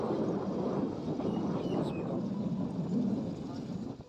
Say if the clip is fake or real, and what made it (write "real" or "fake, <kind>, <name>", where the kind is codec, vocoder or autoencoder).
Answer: real